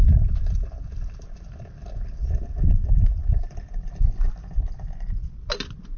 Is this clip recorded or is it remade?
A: recorded